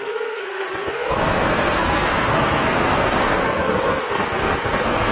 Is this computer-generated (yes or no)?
yes